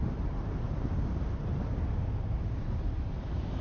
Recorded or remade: remade